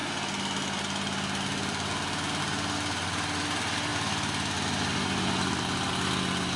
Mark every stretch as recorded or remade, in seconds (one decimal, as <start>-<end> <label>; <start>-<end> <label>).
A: 0.0-6.6 recorded